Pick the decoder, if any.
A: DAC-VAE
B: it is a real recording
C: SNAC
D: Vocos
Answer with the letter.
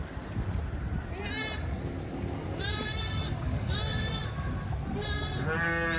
B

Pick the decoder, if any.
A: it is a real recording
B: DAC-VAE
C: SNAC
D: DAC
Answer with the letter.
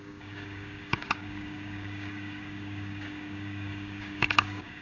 D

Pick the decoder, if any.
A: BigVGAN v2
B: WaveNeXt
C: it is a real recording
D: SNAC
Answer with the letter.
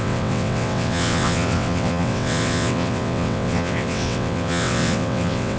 B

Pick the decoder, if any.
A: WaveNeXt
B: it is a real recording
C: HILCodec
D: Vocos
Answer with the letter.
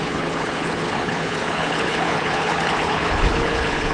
C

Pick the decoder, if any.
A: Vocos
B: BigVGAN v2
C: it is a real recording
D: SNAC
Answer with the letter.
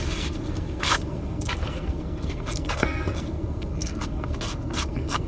D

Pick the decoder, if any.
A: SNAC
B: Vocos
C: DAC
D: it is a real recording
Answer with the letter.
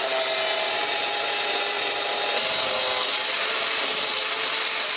D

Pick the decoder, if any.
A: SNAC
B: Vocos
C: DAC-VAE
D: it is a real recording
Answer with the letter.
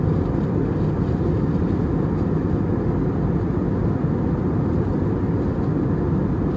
D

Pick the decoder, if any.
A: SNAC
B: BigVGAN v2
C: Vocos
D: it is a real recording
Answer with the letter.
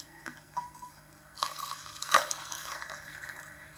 A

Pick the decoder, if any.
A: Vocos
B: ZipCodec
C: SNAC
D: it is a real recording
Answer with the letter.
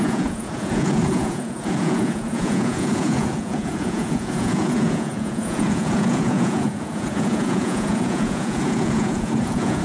A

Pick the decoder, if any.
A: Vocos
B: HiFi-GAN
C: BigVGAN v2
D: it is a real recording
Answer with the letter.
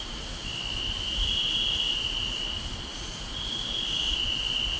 D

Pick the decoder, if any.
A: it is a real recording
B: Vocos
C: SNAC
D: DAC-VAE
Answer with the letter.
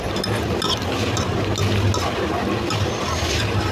A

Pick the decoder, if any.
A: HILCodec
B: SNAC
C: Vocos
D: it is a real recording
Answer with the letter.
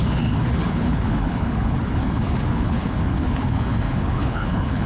A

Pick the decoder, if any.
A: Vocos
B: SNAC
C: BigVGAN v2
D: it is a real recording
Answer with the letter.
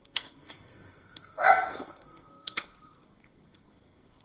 B